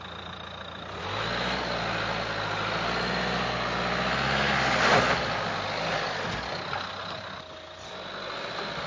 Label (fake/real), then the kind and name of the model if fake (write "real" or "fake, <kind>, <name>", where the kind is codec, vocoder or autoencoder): real